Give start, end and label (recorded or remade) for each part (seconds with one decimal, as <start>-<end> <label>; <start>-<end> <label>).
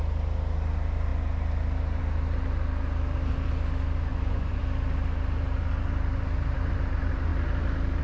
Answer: 0.0-4.1 recorded; 4.1-4.6 remade; 4.6-8.0 recorded